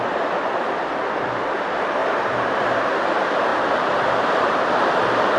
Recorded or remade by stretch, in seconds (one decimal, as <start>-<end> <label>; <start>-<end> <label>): 0.0-2.0 recorded; 2.0-2.6 remade; 2.6-3.5 recorded; 3.5-4.7 remade; 4.7-5.4 recorded